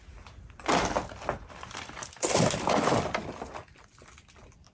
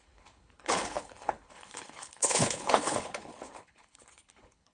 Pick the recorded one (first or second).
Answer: first